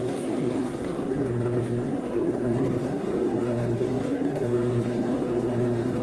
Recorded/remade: remade